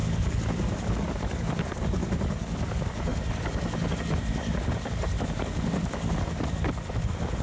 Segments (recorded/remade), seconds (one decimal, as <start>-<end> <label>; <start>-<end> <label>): 0.0-7.4 remade